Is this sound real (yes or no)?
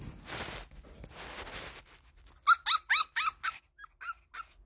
yes